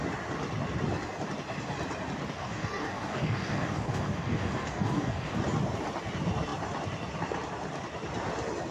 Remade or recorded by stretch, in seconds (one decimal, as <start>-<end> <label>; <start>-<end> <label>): 0.0-2.4 recorded; 2.4-5.4 remade; 5.4-8.7 recorded